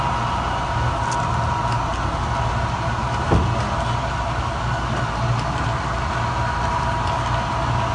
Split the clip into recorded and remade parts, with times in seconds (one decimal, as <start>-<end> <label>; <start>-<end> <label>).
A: 0.0-7.9 recorded